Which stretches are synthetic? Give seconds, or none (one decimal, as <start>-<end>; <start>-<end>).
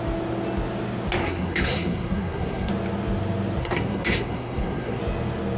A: 1.2-2.7; 3.6-5.0